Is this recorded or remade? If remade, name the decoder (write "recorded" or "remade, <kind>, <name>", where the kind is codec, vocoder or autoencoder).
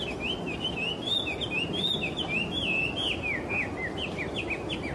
recorded